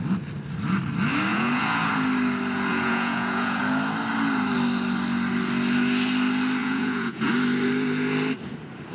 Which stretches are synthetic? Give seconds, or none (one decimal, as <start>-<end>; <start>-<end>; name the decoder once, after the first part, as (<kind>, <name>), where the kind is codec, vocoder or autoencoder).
1.3-1.9 (vocoder, Vocos); 2.7-3.6; 6.6-7.3